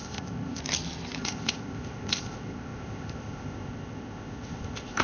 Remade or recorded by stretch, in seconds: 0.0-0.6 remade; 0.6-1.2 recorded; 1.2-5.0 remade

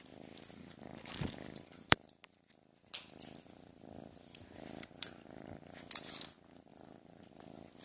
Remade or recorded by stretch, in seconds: 0.0-0.9 recorded; 0.9-2.1 remade; 2.1-7.8 recorded

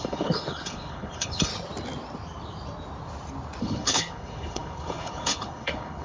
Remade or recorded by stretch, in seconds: 0.0-1.5 remade; 1.5-3.6 recorded; 3.6-6.0 remade